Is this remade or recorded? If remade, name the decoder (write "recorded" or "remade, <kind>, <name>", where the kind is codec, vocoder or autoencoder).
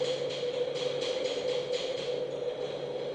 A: recorded